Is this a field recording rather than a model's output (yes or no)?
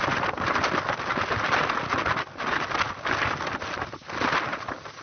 yes